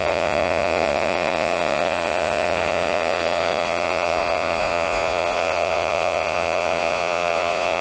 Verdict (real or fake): fake